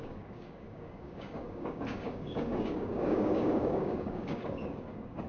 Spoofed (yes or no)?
yes